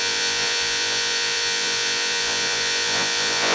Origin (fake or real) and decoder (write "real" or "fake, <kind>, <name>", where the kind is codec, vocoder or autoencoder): fake, vocoder, Vocos